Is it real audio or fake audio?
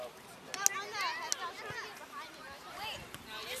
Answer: real